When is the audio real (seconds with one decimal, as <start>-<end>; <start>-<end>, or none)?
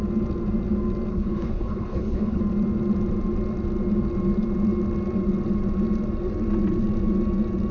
0.0-1.1; 2.4-7.7